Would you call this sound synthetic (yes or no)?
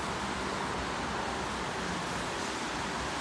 no